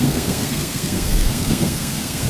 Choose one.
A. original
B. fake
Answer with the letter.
B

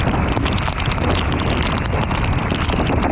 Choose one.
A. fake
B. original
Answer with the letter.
A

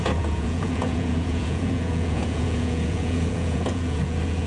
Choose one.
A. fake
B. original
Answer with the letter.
A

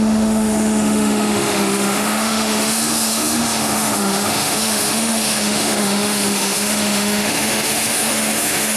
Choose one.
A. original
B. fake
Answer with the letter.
B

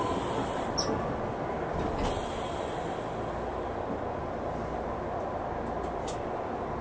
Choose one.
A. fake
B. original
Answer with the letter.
B